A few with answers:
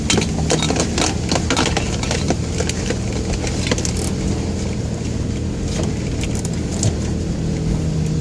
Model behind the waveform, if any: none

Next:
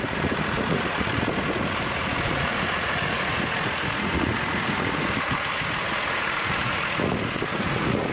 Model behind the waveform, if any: vocoder, Vocos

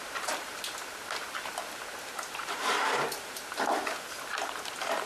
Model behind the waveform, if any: vocoder, BigVGAN v2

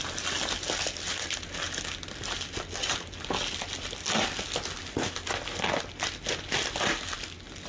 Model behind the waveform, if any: none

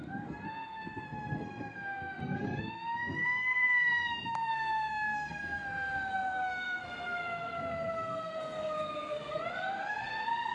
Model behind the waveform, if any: codec, SNAC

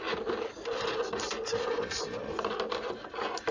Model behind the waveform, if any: none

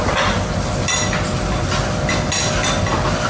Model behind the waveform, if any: none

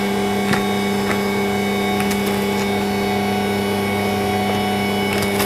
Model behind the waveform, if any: none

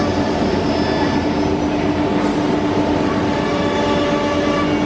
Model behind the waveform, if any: none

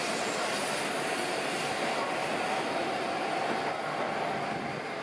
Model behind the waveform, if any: none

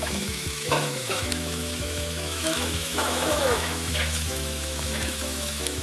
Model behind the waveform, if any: autoencoder, DAC-VAE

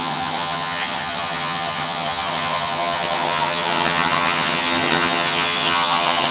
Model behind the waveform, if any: vocoder, HiFi-GAN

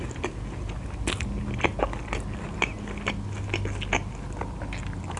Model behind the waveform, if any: none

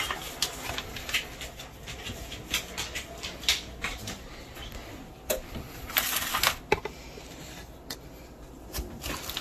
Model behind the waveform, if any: none